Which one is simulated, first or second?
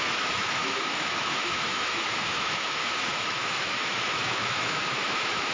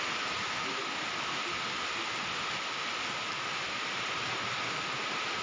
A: first